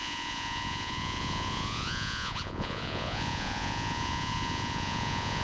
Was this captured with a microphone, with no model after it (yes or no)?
no